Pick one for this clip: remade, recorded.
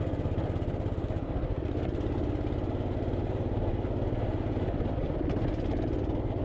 recorded